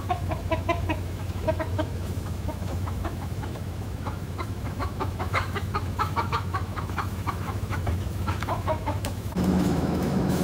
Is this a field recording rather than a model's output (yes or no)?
no